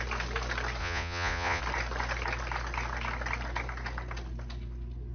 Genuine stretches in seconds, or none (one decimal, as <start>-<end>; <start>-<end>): 0.0-0.8; 1.6-5.1